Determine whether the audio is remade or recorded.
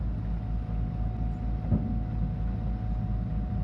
recorded